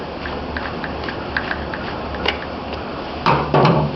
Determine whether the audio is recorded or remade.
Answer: remade